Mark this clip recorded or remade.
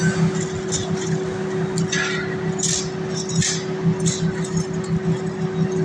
recorded